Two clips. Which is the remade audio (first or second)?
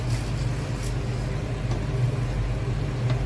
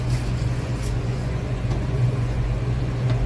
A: second